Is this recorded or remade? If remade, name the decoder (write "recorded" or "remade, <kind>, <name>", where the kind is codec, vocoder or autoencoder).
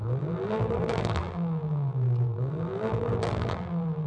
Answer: remade, vocoder, BigVGAN v2